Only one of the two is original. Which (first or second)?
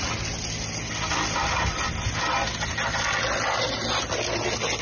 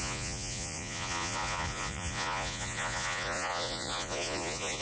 first